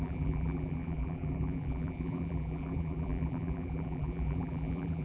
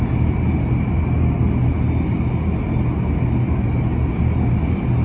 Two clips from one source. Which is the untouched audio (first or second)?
second